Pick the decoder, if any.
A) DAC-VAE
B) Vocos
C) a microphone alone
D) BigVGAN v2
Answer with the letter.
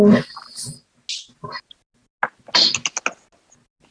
C